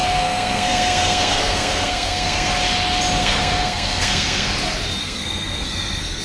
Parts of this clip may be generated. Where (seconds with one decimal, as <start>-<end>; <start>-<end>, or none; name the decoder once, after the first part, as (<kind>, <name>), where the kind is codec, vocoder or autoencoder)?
0.0-2.5 (codec, SNAC); 3.2-4.5; 5.0-6.2